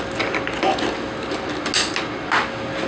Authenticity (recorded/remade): recorded